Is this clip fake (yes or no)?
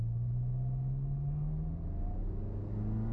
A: no